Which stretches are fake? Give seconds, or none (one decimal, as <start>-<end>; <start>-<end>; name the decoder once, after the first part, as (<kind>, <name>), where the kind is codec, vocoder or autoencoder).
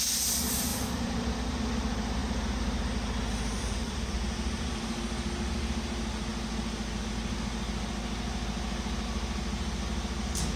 3.6-5.0 (vocoder, BigVGAN v2)